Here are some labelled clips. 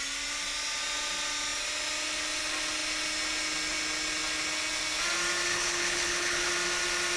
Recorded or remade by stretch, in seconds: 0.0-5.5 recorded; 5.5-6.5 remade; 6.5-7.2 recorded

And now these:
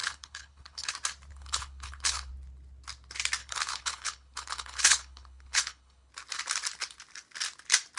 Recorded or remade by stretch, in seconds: 0.0-0.9 remade; 0.9-1.3 recorded; 1.3-2.3 remade; 2.3-3.4 recorded; 3.4-6.1 remade; 6.1-8.0 recorded

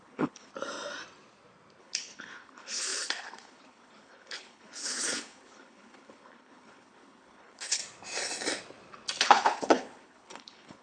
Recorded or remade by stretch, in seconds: 0.0-0.5 remade; 0.5-1.8 recorded; 1.8-7.8 remade; 7.8-9.2 recorded; 9.2-10.8 remade

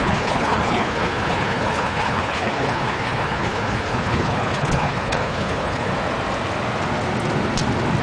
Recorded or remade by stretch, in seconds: 0.0-5.9 remade; 5.9-8.0 recorded

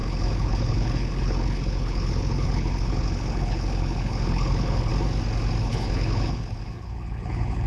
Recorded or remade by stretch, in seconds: 0.0-4.9 remade; 4.9-5.6 recorded; 5.6-7.7 remade